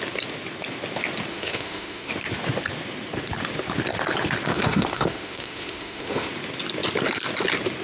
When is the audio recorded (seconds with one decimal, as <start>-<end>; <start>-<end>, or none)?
0.0-1.3; 2.1-4.5; 6.3-7.8